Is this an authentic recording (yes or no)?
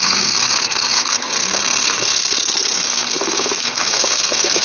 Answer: no